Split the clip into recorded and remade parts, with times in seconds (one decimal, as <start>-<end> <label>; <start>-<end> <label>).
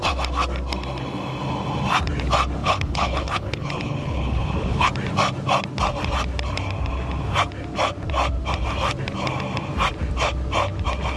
0.0-2.6 recorded; 2.6-4.9 remade; 4.9-11.2 recorded